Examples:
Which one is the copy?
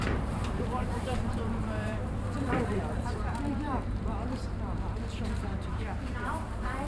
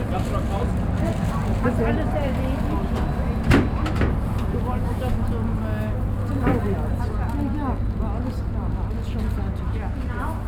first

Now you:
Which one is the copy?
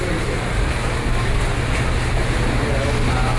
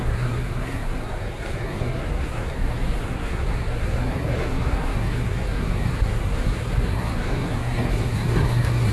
second